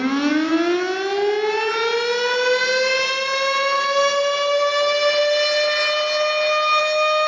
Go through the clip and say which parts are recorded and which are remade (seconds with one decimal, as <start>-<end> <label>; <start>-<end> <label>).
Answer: 0.0-7.3 recorded